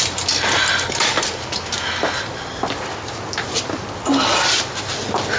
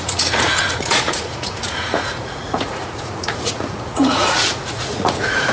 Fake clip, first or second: second